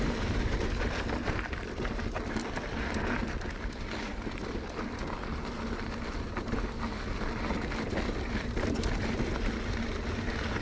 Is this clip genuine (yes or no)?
yes